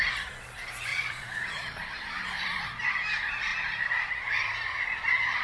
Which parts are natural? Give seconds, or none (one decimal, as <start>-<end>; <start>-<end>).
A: 0.0-0.9; 2.8-5.4